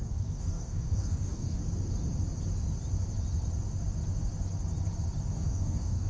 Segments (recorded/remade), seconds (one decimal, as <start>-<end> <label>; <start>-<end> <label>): 0.0-1.6 remade; 1.6-5.3 recorded; 5.3-6.1 remade